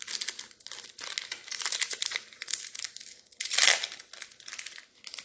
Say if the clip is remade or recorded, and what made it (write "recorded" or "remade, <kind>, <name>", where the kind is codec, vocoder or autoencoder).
recorded